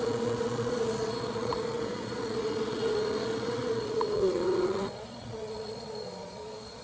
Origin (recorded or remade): remade